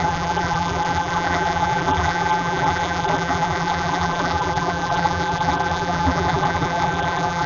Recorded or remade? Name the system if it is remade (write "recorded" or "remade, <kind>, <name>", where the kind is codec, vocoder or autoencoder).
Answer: remade, vocoder, BigVGAN v2